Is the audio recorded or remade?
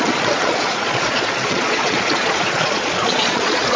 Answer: remade